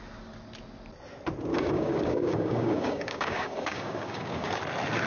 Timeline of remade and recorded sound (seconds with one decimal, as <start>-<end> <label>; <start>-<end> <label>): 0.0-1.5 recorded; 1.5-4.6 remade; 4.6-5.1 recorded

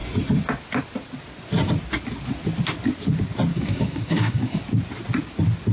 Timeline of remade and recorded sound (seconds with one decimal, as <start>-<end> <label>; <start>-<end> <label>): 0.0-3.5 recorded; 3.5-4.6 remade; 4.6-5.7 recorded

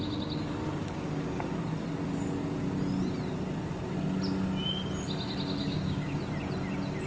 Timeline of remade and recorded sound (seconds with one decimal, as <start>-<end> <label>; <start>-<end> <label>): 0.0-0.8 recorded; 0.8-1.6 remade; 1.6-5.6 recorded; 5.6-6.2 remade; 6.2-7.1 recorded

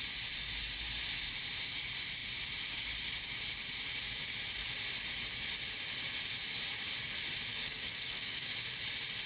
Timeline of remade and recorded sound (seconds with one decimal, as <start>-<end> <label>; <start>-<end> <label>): 0.0-7.5 recorded; 7.5-8.5 remade; 8.5-9.3 recorded

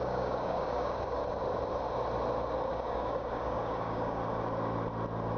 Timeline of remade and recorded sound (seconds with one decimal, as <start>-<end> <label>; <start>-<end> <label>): 0.0-1.2 remade; 1.2-2.7 recorded; 2.7-4.2 remade; 4.2-5.4 recorded

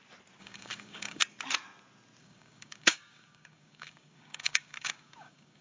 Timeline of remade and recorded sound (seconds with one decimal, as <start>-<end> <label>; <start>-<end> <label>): 0.0-0.4 recorded; 0.4-1.2 remade; 1.2-2.2 recorded; 2.2-5.6 remade